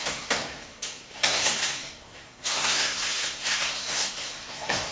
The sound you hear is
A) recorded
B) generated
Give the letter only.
B